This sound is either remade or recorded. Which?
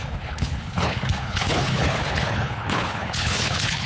remade